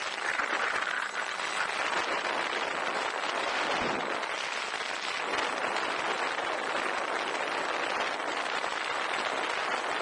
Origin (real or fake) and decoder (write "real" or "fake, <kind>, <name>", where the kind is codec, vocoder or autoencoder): real